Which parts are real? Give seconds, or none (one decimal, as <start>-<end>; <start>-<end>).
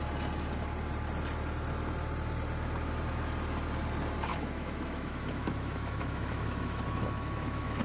0.0-4.3